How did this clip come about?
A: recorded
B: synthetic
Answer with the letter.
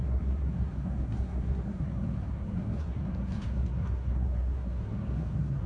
B